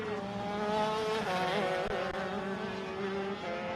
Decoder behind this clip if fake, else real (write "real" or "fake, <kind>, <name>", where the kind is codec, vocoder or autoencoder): real